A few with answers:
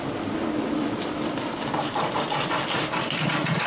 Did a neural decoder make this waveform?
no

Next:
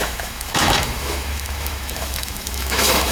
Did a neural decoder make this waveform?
yes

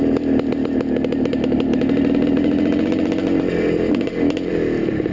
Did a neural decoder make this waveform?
yes